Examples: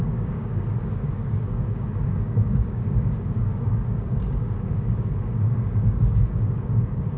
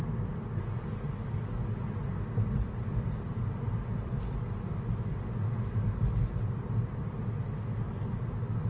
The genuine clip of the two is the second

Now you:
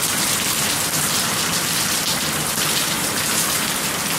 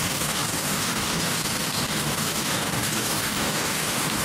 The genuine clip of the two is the first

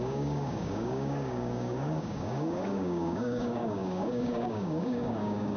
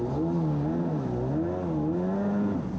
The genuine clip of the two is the second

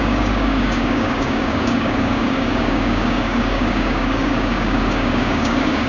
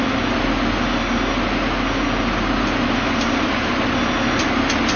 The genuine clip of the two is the second